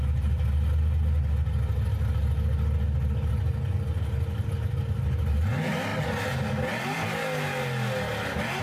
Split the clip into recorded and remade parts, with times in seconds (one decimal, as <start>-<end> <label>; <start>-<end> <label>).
0.0-8.6 recorded